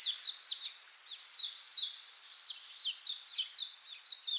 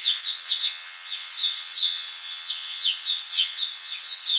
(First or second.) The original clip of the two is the first